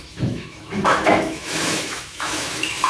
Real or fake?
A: fake